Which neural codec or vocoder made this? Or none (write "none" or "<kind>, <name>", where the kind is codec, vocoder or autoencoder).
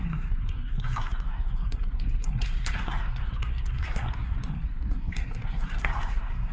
codec, SNAC